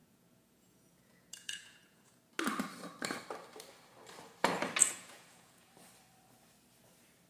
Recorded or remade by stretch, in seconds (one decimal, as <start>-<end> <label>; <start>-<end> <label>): 0.0-2.2 remade; 2.2-4.8 recorded; 4.8-5.7 remade; 5.7-7.3 recorded